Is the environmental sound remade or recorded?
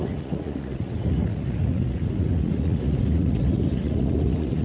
remade